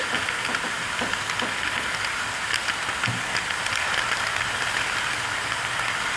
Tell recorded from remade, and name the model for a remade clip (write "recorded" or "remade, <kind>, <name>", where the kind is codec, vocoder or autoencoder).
recorded